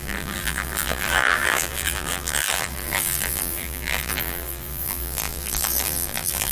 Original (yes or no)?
no